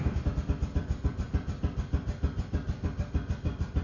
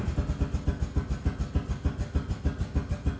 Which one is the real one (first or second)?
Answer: second